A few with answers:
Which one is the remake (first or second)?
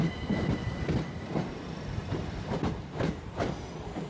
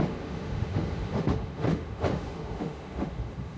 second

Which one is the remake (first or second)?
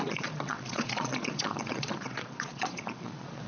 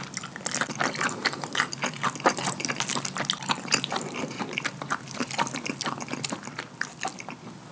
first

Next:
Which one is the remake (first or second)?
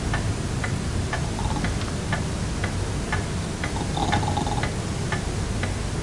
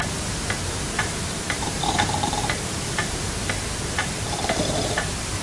second